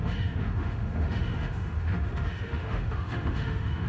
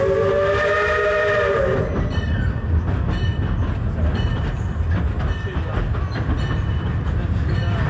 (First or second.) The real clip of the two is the second